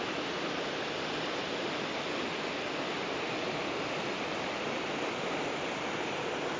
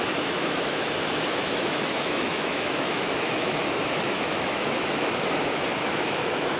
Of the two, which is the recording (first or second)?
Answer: first